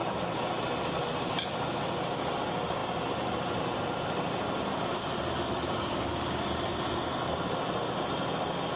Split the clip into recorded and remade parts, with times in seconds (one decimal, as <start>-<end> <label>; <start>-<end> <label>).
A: 0.0-5.5 recorded; 5.5-6.6 remade; 6.6-8.8 recorded